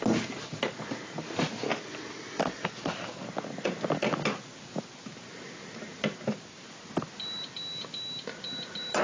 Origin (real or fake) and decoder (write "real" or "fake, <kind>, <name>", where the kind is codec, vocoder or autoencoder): real